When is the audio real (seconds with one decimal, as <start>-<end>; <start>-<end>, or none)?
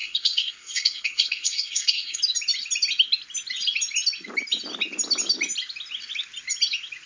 2.2-7.1